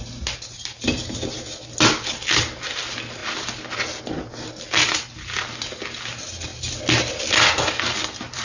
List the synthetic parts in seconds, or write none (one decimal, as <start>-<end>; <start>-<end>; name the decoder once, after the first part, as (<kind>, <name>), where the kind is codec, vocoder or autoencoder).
none